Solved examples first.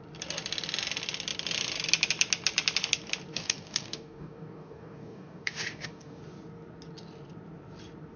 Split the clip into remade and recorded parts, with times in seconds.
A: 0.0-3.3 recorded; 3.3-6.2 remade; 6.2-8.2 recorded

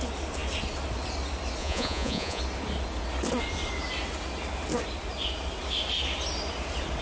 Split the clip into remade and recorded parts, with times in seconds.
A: 0.0-1.6 recorded; 1.6-2.4 remade; 2.4-7.0 recorded

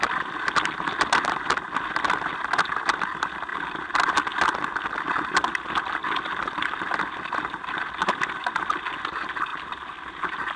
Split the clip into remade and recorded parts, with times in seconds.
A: 0.0-10.6 recorded